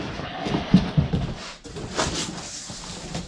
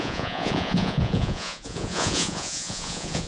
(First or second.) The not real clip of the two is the second